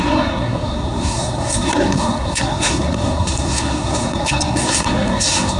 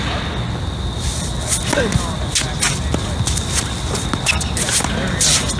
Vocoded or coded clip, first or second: first